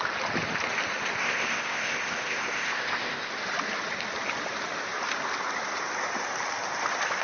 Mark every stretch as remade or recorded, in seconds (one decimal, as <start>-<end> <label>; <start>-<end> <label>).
0.0-1.2 recorded; 1.2-3.3 remade; 3.3-7.2 recorded

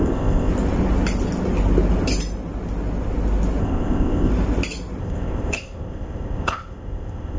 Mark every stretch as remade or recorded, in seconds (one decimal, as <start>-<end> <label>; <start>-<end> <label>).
0.0-0.5 remade; 0.5-3.6 recorded; 3.6-4.3 remade; 4.3-5.0 recorded; 5.0-7.4 remade

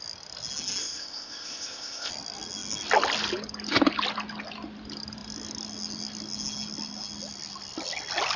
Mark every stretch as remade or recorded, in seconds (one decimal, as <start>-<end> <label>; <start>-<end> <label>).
0.0-0.8 recorded; 0.8-2.1 remade; 2.1-8.4 recorded

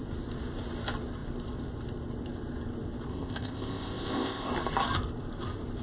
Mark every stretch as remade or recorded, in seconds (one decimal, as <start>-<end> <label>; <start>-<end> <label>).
0.0-3.1 recorded; 3.1-4.5 remade; 4.5-5.8 recorded

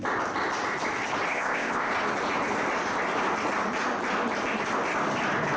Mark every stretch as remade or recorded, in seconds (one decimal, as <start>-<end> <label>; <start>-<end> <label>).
0.0-1.3 recorded; 1.3-1.9 remade; 1.9-5.6 recorded

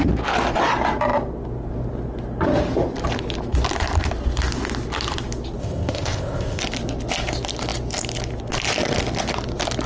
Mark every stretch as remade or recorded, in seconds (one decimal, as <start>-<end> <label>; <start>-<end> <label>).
0.0-5.6 recorded; 5.6-6.6 remade; 6.6-9.9 recorded

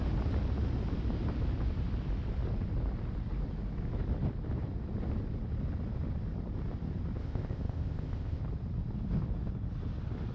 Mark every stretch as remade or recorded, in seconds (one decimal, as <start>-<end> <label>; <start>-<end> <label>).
0.0-7.2 recorded; 7.2-8.4 remade; 8.4-10.3 recorded

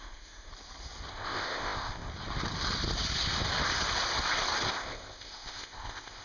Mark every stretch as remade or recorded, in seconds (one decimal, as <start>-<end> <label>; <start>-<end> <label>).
0.0-0.5 remade; 0.5-1.1 recorded; 1.1-2.1 remade; 2.1-4.7 recorded; 4.7-6.2 remade